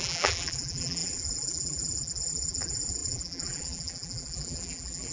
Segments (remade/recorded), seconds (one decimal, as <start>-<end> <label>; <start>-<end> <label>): 0.0-5.1 remade